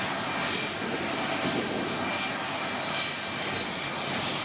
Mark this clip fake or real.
real